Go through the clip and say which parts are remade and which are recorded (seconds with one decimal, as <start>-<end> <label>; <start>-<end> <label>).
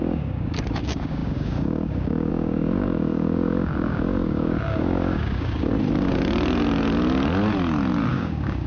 0.0-5.7 remade; 5.7-8.1 recorded; 8.1-8.7 remade